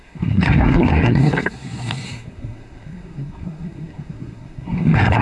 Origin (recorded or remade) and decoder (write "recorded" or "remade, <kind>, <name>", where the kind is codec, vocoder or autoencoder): remade, codec, SNAC